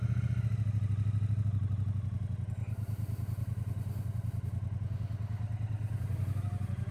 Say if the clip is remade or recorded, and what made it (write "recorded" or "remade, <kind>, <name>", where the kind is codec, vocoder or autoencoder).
recorded